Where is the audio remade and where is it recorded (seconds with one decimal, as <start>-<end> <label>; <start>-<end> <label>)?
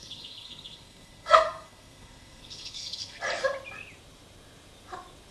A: 0.0-3.2 remade; 3.2-5.3 recorded